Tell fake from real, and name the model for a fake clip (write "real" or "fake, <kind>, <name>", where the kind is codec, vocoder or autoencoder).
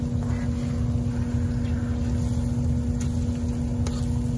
real